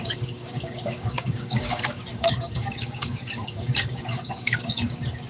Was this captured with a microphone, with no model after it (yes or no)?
no